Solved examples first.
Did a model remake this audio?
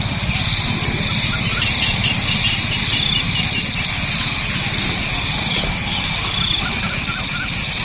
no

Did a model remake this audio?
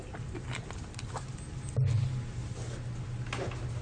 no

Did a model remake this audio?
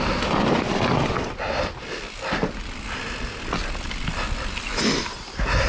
no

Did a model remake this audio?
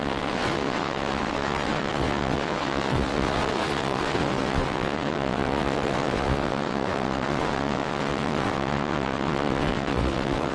yes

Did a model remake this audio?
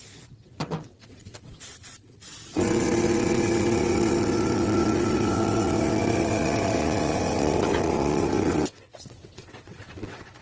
yes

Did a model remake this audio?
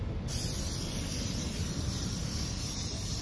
no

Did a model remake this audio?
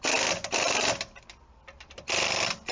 no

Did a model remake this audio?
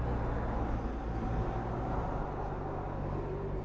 no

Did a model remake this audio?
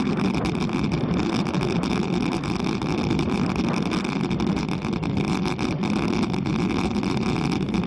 no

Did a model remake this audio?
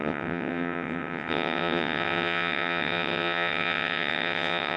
yes